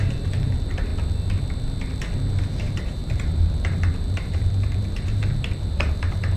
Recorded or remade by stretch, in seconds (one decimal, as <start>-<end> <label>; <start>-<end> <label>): 0.0-0.9 remade; 0.9-2.4 recorded; 2.4-6.4 remade